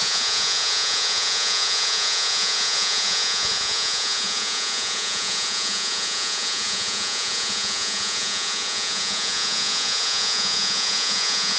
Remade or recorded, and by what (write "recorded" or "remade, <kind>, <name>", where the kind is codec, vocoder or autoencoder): remade, vocoder, Vocos